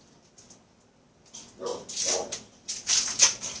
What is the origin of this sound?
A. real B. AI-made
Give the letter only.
A